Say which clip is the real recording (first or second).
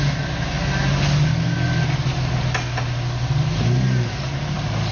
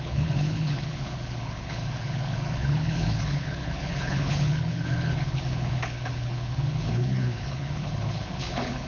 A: first